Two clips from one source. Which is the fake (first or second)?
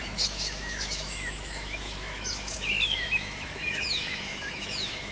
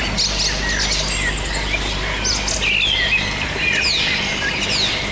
first